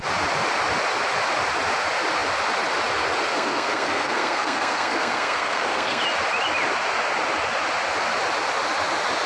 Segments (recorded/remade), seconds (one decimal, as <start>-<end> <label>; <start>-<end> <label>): 0.0-3.3 recorded; 3.3-6.0 remade; 6.0-9.3 recorded